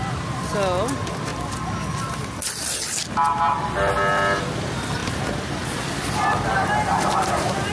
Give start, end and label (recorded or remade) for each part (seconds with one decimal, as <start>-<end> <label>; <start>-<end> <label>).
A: 0.0-5.0 recorded; 5.0-5.8 remade; 5.8-6.9 recorded; 6.9-7.7 remade